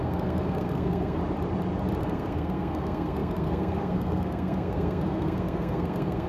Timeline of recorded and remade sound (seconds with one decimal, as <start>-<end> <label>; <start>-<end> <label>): 0.0-1.2 remade; 1.2-2.0 recorded; 2.0-6.3 remade